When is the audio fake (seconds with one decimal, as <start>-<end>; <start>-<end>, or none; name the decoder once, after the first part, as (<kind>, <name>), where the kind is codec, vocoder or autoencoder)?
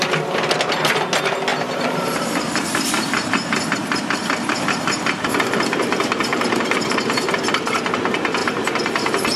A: 1.5-5.2 (vocoder, BigVGAN v2); 6.3-7.0; 8.4-9.4